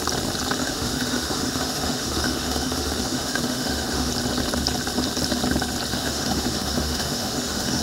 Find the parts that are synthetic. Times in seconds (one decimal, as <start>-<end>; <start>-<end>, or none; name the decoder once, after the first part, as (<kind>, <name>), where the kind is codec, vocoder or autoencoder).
0.6-4.1 (autoencoder, DAC-VAE); 5.9-7.8